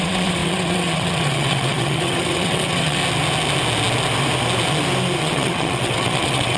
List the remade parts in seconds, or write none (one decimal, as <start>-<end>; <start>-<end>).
0.0-3.0; 5.2-6.6